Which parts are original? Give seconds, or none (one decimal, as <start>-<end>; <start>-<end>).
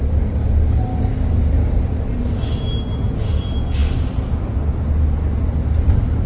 0.0-0.9; 1.5-6.3